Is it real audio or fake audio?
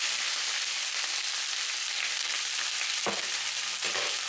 real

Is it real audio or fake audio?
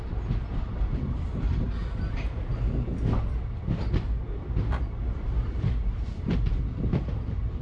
fake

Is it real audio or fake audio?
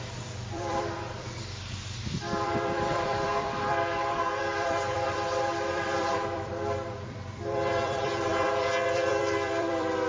fake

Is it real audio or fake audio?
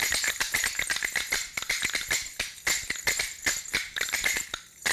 real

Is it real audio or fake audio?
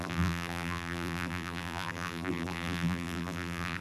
fake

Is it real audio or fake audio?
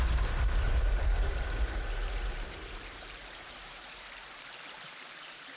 fake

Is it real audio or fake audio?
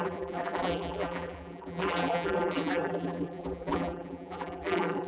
fake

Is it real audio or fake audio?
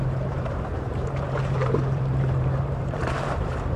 fake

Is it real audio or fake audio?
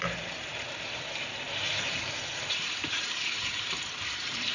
fake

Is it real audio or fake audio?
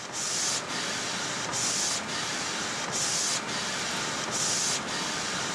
real